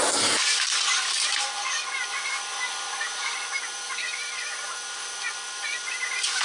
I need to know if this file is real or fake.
real